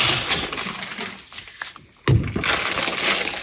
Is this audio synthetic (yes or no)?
no